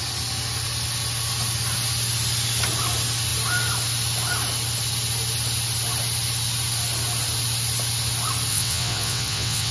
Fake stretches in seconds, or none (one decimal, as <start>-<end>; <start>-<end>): 8.5-9.7